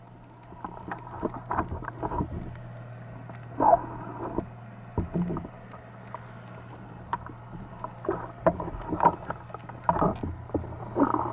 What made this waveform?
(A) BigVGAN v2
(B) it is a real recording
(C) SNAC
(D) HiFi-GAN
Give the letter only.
B